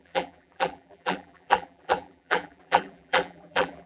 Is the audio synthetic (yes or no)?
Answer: yes